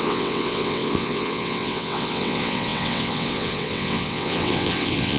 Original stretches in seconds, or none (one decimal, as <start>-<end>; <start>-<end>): none